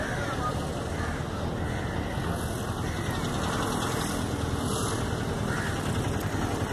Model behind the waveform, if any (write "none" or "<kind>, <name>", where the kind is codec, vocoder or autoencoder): none